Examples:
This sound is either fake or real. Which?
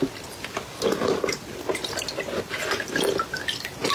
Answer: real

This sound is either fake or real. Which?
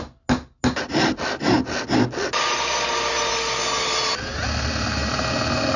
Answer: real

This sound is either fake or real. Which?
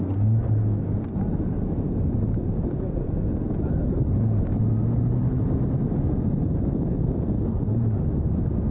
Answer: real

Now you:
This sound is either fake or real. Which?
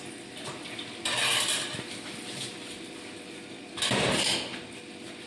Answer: real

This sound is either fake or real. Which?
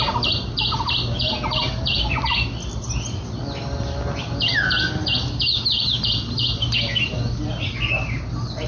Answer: real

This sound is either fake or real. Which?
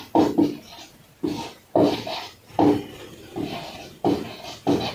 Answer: real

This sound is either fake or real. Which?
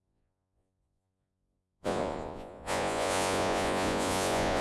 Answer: fake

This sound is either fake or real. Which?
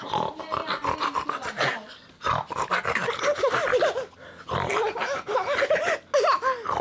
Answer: real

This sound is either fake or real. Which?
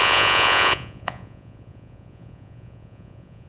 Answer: fake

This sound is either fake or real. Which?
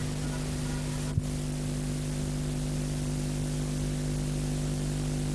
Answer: real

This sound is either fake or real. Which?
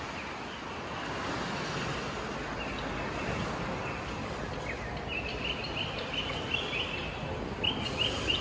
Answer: real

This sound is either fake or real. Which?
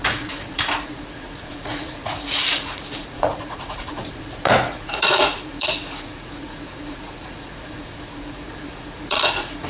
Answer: fake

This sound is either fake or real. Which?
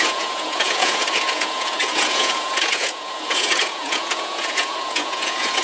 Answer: fake